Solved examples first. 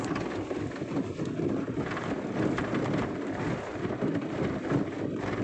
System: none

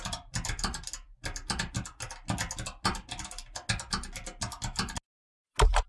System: none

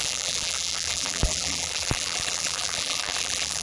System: vocoder, BigVGAN v2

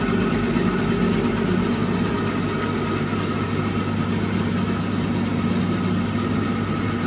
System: none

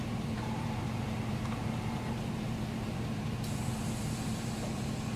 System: vocoder, BigVGAN v2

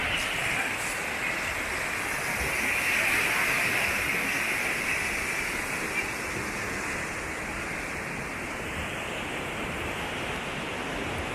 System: none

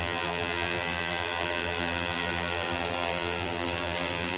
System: vocoder, BigVGAN v2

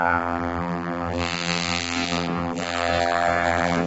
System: vocoder, BigVGAN v2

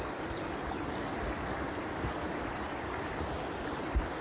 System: vocoder, BigVGAN v2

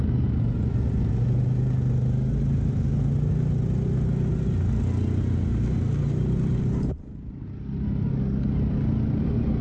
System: none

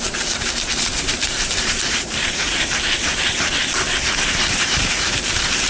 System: vocoder, BigVGAN v2